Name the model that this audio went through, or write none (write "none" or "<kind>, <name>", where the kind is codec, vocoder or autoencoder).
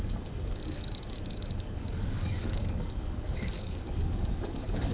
codec, DAC